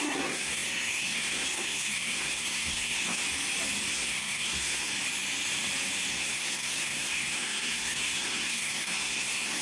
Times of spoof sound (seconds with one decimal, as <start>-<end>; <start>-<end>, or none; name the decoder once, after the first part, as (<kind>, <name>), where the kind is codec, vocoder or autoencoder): 0.0-3.2 (codec, SNAC); 3.9-4.9; 6.1-9.6